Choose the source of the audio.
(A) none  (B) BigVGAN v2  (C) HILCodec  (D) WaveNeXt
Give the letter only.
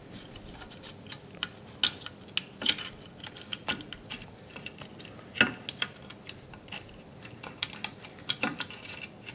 A